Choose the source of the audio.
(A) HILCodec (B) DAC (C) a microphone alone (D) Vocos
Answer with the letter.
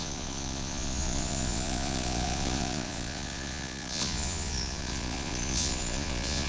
D